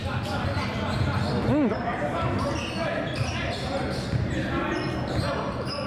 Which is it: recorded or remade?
recorded